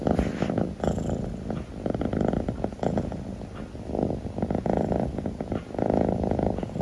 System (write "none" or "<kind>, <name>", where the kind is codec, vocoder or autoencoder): none